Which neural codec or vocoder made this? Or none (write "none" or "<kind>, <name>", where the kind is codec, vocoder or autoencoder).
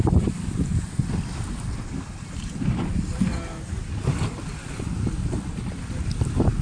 none